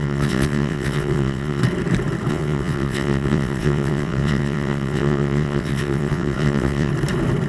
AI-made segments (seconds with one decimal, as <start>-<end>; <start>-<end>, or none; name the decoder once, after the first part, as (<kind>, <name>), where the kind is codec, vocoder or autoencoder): 0.0-1.6 (vocoder, WaveNeXt); 2.3-6.9